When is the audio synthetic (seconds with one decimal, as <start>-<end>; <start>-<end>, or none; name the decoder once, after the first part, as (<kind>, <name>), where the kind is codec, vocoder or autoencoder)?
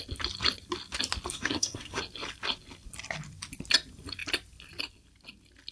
1.3-2.0 (codec, SNAC)